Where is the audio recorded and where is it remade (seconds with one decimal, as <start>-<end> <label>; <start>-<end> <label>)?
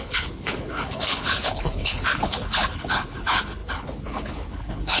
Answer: 0.0-5.0 remade